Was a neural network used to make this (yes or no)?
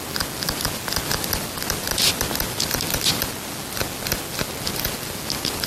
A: no